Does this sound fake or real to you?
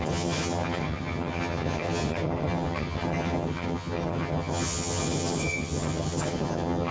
fake